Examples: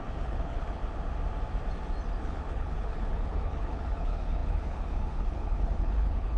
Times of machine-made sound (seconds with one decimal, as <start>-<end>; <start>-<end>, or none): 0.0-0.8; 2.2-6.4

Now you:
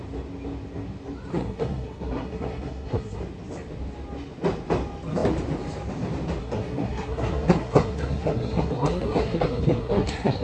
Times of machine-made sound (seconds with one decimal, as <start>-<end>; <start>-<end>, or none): 1.3-3.2; 6.4-10.4

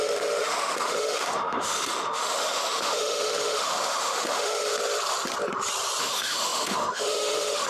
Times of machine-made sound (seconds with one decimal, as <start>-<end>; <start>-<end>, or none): 0.0-4.7; 6.0-7.7

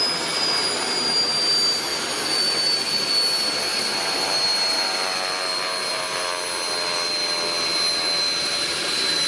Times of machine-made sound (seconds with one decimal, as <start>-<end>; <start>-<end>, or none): 3.7-6.3; 8.4-9.3